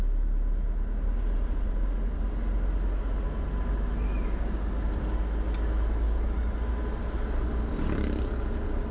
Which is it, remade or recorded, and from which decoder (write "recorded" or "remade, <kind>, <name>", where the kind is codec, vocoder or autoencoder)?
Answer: recorded